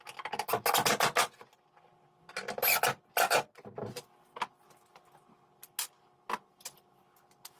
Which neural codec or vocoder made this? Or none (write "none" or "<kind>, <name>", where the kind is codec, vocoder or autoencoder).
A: none